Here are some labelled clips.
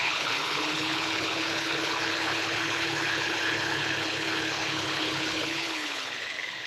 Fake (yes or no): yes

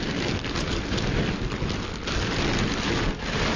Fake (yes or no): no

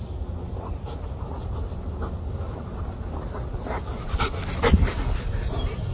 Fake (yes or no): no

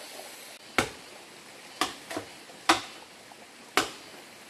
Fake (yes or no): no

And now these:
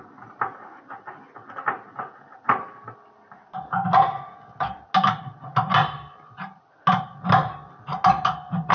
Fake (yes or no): no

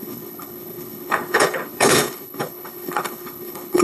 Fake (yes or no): yes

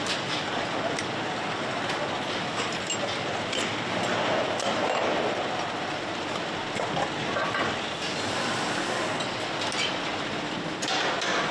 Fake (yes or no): no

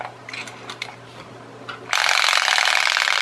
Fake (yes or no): no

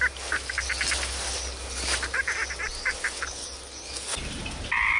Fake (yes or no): no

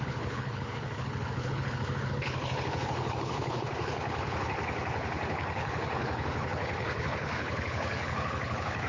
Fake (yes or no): yes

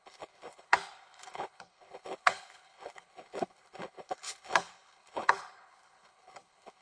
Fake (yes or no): yes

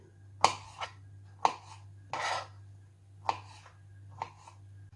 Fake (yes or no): no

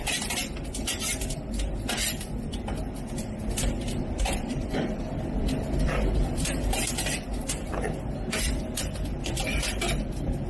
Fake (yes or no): no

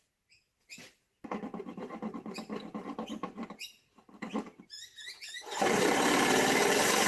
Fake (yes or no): no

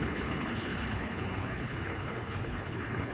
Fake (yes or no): yes